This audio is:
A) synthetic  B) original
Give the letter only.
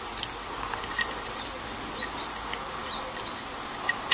B